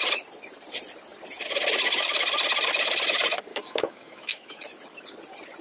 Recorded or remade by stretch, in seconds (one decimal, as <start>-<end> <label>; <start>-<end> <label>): 0.0-3.5 recorded; 3.5-4.6 remade; 4.6-5.6 recorded